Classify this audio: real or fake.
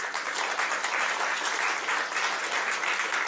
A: real